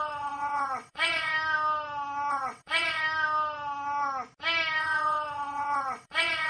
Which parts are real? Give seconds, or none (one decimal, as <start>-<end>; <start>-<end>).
1.3-2.3; 3.0-4.8